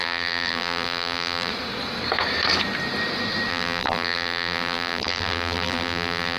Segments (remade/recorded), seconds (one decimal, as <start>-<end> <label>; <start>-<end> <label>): 0.0-1.5 remade; 1.5-3.5 recorded; 3.5-6.4 remade